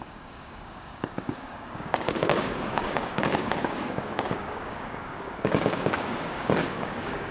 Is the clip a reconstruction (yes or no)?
yes